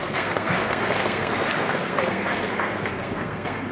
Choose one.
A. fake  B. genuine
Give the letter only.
A